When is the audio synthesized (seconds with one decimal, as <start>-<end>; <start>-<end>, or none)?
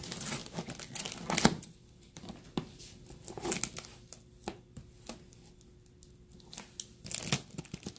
none